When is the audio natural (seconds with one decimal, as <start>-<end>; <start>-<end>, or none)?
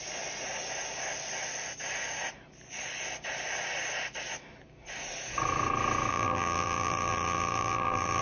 0.0-6.1